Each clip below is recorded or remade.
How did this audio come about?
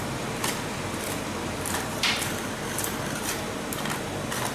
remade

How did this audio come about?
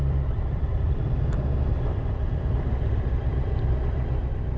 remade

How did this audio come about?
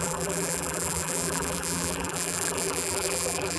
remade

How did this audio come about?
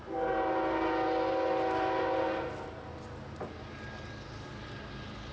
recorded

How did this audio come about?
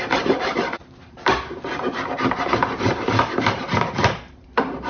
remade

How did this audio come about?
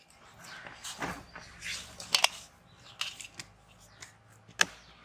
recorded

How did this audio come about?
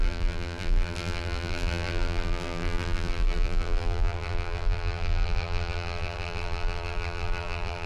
remade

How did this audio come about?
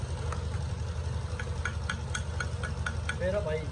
recorded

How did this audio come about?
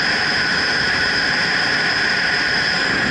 remade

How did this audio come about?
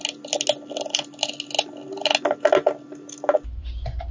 recorded